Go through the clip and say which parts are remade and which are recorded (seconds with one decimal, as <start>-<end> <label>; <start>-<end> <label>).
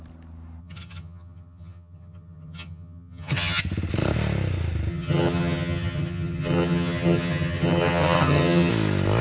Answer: 0.0-0.6 recorded; 0.6-3.6 remade; 3.6-4.9 recorded; 4.9-8.7 remade; 8.7-9.2 recorded